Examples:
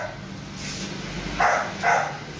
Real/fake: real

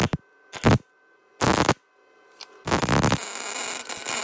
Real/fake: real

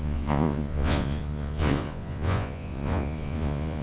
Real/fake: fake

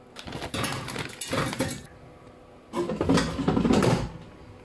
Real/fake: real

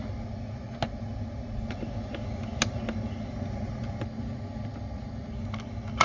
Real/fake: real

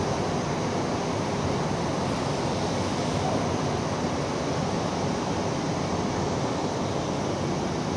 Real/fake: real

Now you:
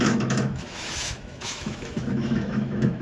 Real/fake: fake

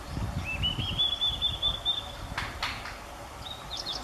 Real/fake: real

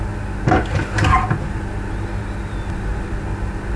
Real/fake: real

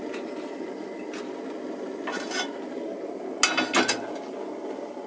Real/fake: real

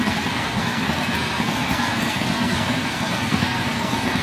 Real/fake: fake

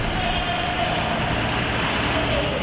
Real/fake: real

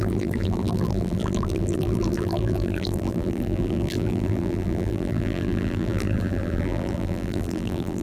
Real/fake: fake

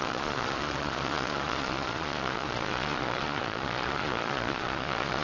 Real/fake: fake